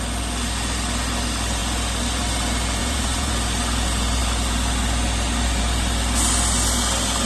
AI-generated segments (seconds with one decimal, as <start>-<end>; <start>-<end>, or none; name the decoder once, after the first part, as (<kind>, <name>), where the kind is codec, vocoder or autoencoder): 2.8-3.3 (vocoder, Vocos)